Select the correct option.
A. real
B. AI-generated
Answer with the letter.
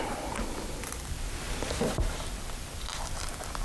B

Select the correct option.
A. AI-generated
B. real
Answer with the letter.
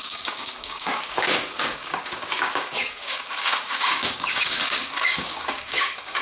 A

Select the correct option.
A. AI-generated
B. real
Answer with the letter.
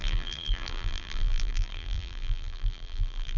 A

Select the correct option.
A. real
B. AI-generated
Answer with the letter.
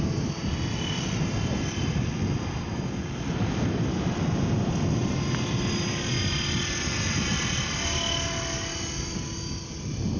A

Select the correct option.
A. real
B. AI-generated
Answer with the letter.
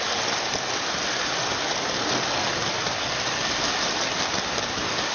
A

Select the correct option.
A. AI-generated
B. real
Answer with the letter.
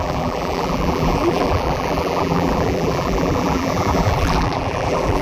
A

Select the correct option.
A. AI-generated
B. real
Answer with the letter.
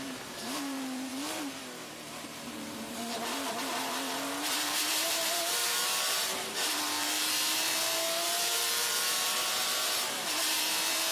A